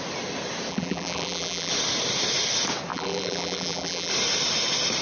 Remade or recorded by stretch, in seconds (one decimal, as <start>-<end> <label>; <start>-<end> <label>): 0.0-0.7 recorded; 0.7-1.7 remade; 1.7-2.9 recorded; 2.9-4.1 remade; 4.1-5.0 recorded